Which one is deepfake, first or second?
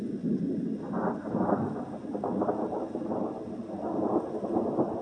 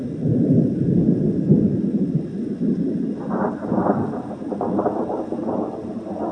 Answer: second